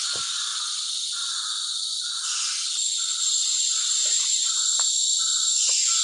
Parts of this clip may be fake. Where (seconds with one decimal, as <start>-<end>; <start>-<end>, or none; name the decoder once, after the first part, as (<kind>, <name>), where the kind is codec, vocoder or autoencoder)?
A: none

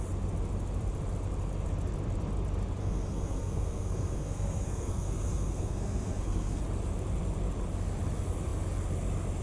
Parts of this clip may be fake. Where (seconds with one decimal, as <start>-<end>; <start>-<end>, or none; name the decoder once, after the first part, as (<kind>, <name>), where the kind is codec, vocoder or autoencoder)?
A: 2.8-6.6 (codec, SNAC)

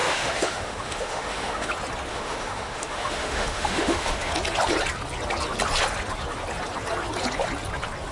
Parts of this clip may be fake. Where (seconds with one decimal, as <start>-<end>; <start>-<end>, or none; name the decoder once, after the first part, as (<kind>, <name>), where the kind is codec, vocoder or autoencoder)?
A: 0.0-1.7 (autoencoder, DAC-VAE); 2.1-4.3

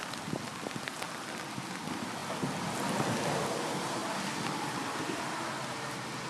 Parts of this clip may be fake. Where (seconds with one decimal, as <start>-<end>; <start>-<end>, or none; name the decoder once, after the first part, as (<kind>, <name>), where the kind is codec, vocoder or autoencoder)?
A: none